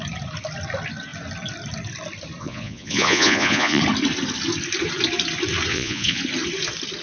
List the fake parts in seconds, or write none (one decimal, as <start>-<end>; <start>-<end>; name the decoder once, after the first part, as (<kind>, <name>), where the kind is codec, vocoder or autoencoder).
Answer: 2.4-3.8 (vocoder, Vocos); 5.7-6.2